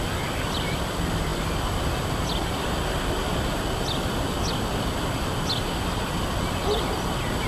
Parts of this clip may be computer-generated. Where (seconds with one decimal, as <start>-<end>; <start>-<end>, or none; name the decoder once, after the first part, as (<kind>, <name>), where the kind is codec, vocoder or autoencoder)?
none